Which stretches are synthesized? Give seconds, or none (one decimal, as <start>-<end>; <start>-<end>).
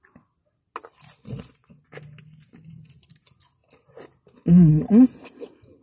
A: 1.2-1.7